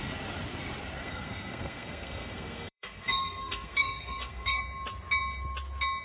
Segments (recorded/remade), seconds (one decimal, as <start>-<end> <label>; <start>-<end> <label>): 0.0-1.0 recorded; 1.0-4.6 remade; 4.6-6.0 recorded